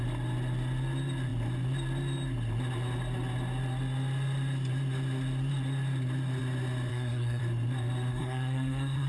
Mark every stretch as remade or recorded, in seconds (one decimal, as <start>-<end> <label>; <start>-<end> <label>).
0.0-6.9 recorded; 6.9-7.4 remade; 7.4-8.1 recorded; 8.1-9.1 remade